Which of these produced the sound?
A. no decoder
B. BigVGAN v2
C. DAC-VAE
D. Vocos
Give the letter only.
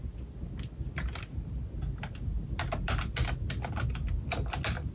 A